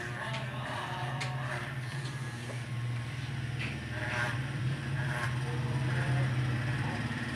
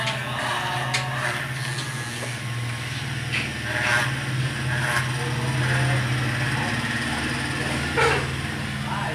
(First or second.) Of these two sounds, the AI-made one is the first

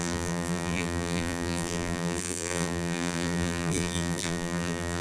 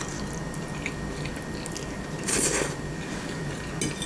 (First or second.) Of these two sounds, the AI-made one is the first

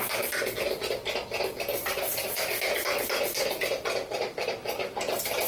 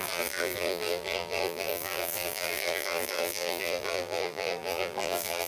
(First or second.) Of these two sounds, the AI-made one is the second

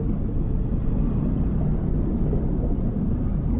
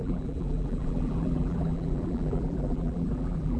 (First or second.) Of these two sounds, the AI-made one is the second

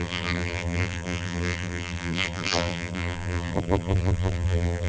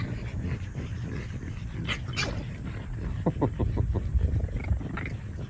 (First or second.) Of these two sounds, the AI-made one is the first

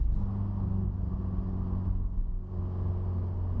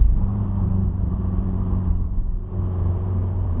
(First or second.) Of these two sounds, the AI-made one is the second